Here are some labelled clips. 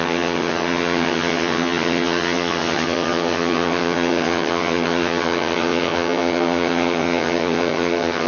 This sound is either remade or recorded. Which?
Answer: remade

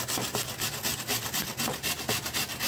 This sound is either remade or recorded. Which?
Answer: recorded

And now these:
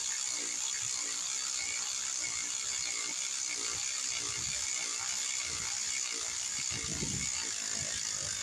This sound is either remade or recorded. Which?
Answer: recorded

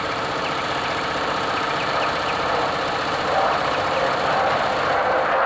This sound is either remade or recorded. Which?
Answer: recorded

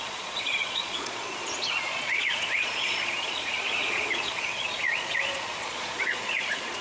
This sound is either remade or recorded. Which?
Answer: remade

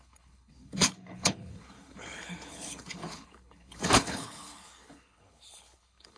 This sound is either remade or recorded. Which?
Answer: remade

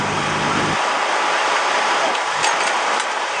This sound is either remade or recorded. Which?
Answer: recorded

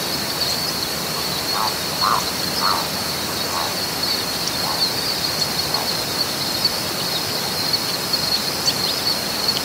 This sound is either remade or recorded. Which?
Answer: recorded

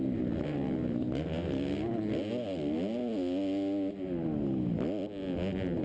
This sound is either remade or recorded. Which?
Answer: recorded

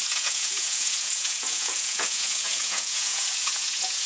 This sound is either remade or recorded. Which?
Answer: remade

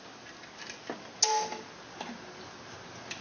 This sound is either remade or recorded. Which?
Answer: recorded